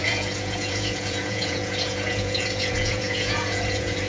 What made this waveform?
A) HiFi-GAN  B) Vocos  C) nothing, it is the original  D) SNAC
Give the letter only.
B